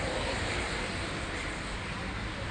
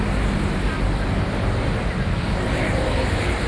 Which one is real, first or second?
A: second